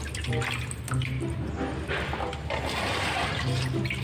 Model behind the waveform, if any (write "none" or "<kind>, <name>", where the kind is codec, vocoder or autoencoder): none